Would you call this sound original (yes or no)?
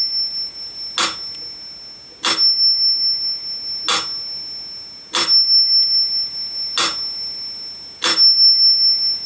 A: yes